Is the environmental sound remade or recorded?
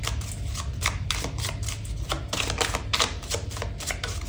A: recorded